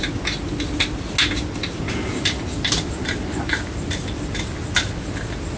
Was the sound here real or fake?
real